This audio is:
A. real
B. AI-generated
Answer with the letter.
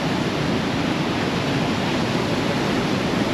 A